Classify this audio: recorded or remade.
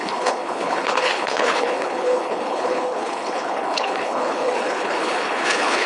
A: remade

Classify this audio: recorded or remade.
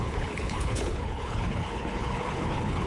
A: remade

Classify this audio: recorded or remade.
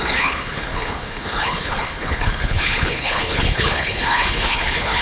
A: remade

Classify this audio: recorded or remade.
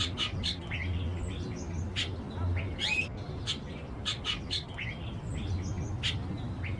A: recorded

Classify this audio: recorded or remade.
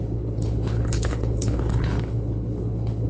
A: remade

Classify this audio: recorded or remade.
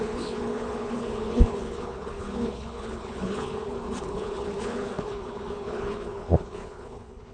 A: remade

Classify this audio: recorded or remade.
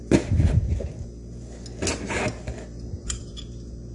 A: recorded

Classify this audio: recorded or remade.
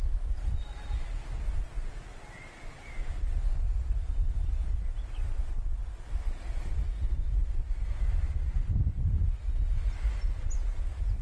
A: recorded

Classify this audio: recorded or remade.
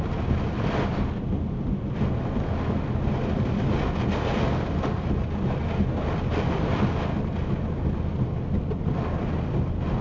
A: recorded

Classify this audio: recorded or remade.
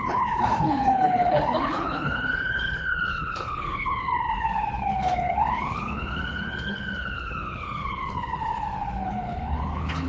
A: remade